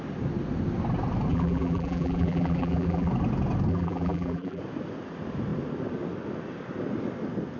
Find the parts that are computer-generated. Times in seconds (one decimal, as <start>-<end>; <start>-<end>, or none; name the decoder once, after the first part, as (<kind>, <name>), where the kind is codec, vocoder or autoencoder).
1.3-3.1 (vocoder, BigVGAN v2); 3.7-4.6